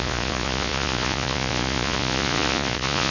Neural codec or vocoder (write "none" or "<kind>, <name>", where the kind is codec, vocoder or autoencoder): vocoder, Vocos